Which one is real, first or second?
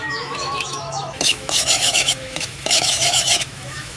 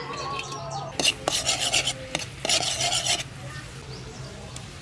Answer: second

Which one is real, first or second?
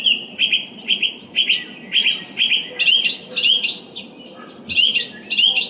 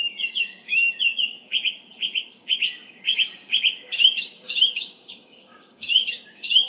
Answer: first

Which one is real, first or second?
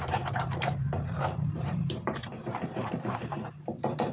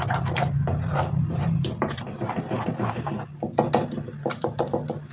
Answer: second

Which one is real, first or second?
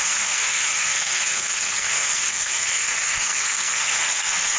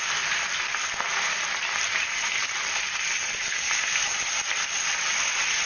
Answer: second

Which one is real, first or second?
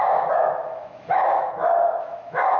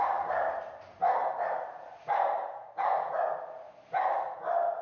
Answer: second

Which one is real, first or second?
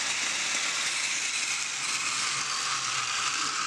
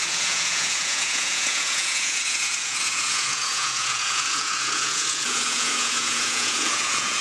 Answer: first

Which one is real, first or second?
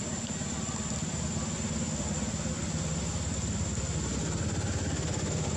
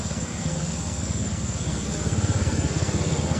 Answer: first